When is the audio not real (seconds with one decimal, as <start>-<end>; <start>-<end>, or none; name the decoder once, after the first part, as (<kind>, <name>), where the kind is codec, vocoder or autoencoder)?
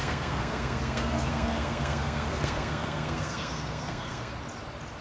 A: 0.0-4.3 (codec, SNAC)